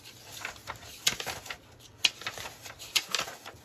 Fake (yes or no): no